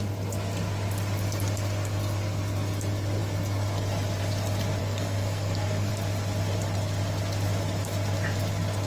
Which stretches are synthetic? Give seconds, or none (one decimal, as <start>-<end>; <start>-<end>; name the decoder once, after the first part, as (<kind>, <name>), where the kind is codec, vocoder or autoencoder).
4.8-5.9 (codec, SNAC)